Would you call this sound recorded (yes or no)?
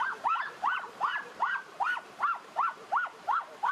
no